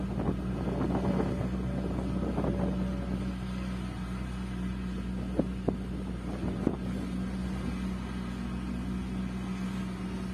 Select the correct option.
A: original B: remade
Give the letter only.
A